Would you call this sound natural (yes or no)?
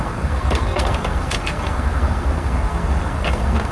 no